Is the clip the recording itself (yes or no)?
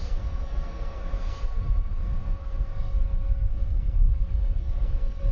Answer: no